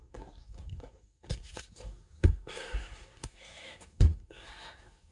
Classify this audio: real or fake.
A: fake